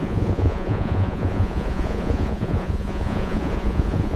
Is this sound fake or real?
fake